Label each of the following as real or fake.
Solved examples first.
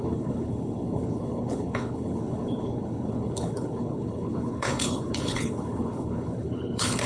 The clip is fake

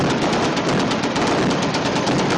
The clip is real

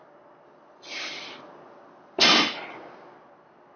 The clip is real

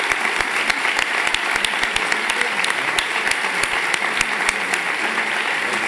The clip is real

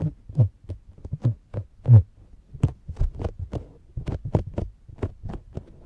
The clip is real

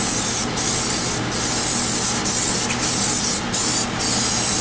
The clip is real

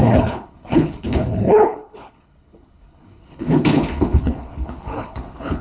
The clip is fake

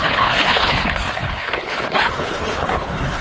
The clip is fake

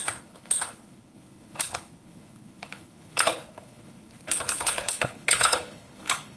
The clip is fake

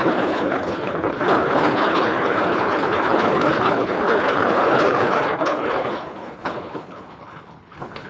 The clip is fake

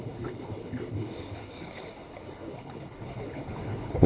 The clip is fake